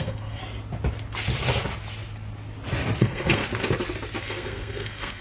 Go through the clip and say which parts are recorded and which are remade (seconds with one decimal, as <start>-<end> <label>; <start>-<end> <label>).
0.0-0.4 remade; 0.4-3.0 recorded; 3.0-3.4 remade; 3.4-4.2 recorded; 4.2-5.2 remade